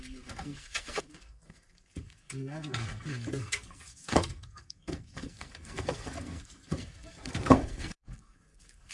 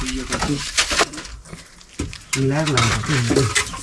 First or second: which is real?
second